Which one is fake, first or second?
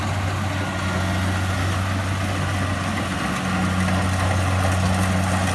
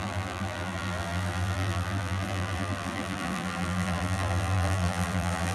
second